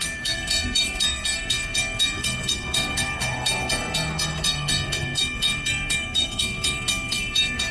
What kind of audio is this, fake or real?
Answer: fake